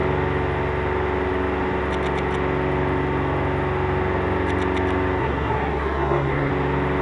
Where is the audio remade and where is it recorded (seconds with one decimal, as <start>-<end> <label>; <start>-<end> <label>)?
0.0-5.2 recorded; 5.2-6.5 remade; 6.5-7.0 recorded